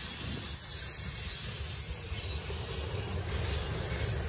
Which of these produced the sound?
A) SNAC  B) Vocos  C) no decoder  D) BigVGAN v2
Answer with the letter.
C